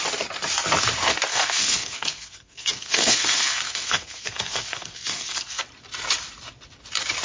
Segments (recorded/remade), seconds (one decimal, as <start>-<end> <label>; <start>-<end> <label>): 0.0-1.3 recorded; 1.3-5.6 remade; 5.6-7.2 recorded